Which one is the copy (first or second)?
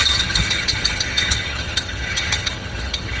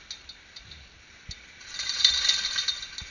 first